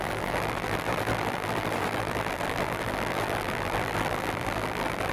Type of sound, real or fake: fake